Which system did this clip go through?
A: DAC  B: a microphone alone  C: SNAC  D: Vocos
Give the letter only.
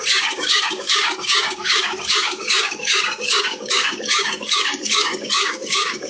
A